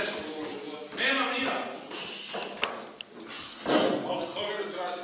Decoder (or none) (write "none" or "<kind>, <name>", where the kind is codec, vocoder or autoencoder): none